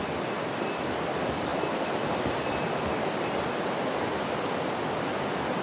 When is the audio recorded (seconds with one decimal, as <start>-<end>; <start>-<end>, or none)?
0.0-5.6